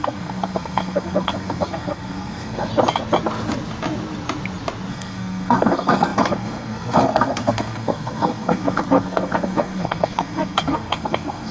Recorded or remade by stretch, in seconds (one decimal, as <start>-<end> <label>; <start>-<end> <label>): 0.0-2.7 remade; 2.7-4.9 recorded; 4.9-11.5 remade

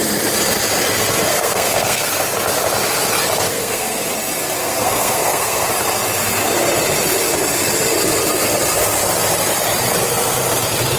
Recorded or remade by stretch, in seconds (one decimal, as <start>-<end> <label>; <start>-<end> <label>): 0.0-1.3 recorded; 1.3-2.2 remade; 2.2-3.5 recorded; 3.5-4.1 remade; 4.1-4.6 recorded; 4.6-5.7 remade; 5.7-11.0 recorded

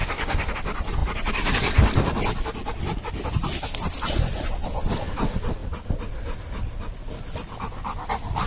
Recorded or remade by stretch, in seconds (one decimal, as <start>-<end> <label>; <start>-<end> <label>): 0.0-0.5 remade; 0.5-8.5 recorded

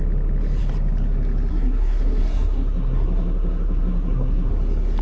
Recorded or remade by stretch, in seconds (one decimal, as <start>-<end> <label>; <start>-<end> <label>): 0.0-1.5 recorded; 1.5-4.5 remade; 4.5-5.0 recorded

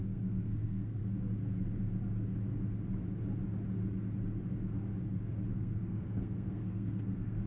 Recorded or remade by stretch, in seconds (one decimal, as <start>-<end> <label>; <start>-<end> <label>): 0.0-1.0 remade; 1.0-5.5 recorded; 5.5-7.5 remade